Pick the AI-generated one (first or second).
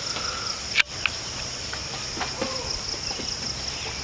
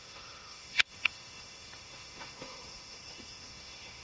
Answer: second